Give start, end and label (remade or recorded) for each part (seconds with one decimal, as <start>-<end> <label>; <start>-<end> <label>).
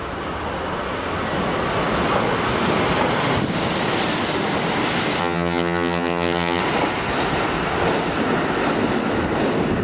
0.0-5.2 recorded; 5.2-6.6 remade; 6.6-9.8 recorded